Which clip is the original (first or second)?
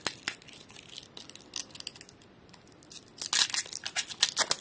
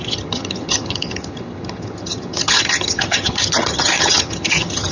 first